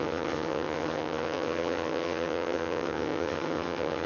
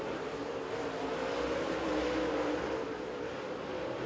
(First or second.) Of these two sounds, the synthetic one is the first